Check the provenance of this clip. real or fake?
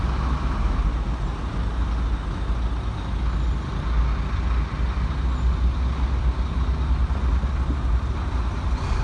real